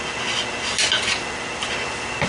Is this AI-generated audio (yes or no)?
no